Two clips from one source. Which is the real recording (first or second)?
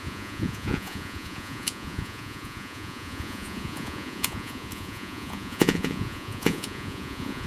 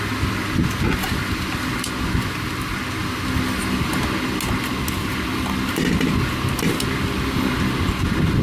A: second